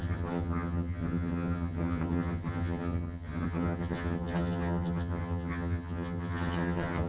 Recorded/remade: remade